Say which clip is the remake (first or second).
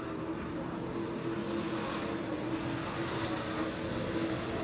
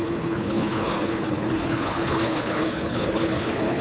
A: second